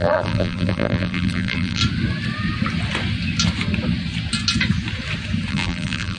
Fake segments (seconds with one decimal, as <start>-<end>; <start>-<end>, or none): 0.0-1.8; 5.5-6.2